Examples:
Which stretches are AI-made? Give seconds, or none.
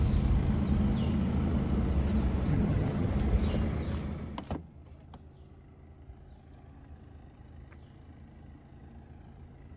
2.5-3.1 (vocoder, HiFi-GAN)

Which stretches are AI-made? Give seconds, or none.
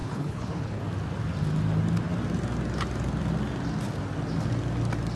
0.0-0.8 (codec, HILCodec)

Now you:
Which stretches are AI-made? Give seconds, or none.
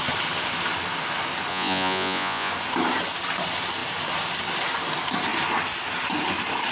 1.5-2.5 (vocoder, Vocos)